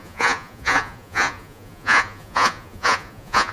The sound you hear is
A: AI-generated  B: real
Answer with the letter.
A